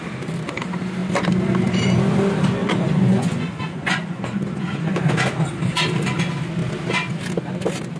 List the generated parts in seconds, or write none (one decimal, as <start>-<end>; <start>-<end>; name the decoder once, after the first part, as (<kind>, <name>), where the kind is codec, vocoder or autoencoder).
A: 2.6-5.0 (vocoder, Vocos)